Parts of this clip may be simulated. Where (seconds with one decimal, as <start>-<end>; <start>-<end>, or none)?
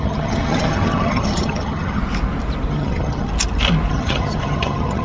0.0-2.0; 2.7-3.3; 3.9-5.0